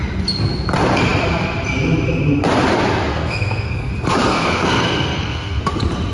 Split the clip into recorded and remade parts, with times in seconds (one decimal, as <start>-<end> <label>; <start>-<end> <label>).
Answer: 0.0-3.1 recorded; 3.1-3.9 remade; 3.9-4.3 recorded; 4.3-5.6 remade; 5.6-6.1 recorded